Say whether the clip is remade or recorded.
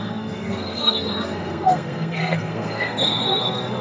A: remade